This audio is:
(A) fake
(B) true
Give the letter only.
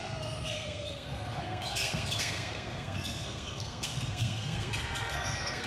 A